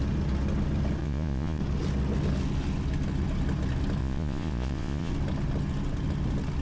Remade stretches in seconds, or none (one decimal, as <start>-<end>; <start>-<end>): 1.0-1.6; 4.0-5.1